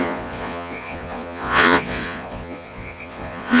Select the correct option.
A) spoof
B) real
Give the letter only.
A